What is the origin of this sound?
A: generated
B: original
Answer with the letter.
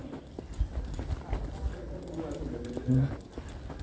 B